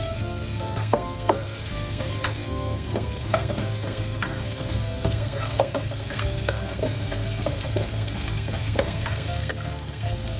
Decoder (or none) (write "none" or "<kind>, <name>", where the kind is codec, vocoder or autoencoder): codec, SNAC